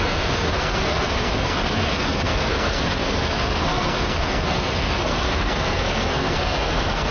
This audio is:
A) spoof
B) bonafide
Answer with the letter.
A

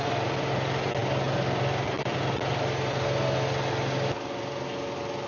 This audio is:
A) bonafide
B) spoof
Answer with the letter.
A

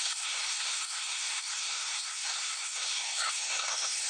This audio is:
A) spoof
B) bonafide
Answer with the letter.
A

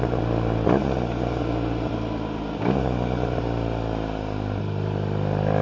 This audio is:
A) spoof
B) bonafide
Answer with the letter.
B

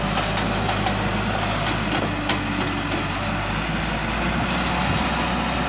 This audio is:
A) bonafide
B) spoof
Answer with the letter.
A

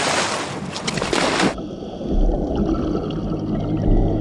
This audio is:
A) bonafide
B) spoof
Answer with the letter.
A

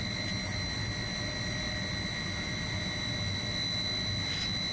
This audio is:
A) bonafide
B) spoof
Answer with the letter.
A